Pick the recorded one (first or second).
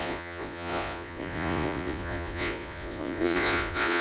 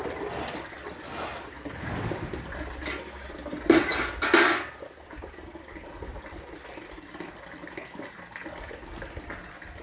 second